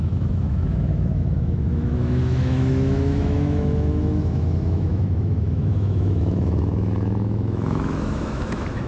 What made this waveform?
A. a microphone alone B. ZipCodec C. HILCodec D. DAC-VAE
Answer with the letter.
D